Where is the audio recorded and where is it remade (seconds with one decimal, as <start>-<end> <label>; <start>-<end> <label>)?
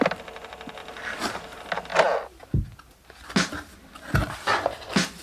0.0-0.8 recorded; 0.8-1.4 remade; 1.4-5.2 recorded